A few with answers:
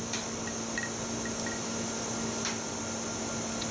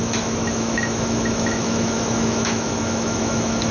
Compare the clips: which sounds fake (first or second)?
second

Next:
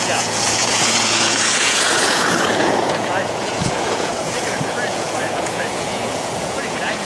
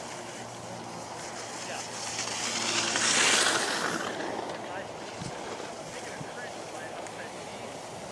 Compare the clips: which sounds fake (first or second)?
first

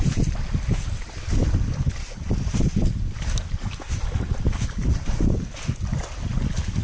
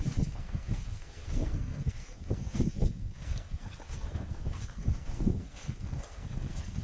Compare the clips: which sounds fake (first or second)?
second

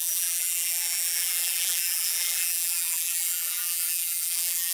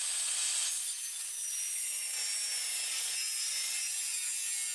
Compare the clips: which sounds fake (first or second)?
first